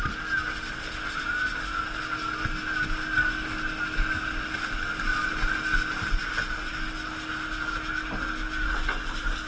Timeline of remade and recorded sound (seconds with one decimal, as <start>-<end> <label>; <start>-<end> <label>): 0.0-9.5 recorded